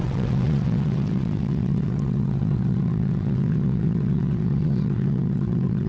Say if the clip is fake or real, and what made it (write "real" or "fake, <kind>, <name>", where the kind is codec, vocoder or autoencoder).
fake, vocoder, WaveNeXt